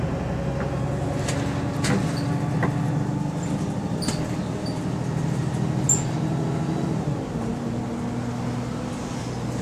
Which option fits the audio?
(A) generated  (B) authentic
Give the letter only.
B